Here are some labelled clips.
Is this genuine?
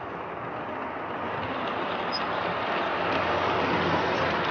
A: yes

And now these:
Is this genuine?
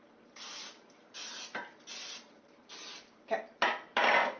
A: yes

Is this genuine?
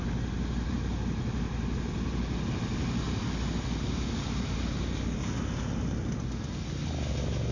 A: yes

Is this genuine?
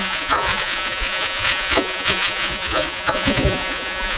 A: no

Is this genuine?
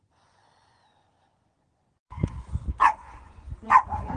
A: no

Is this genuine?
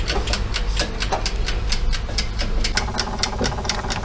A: yes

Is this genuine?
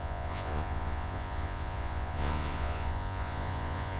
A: no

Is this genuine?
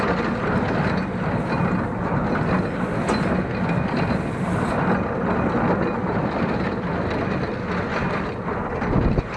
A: yes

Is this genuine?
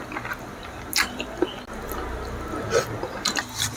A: yes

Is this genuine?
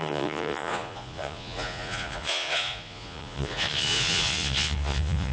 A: no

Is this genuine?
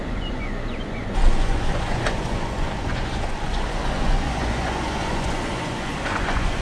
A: no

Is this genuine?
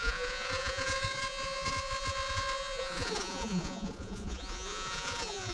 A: no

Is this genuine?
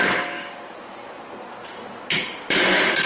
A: yes